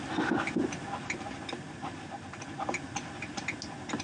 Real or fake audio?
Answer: real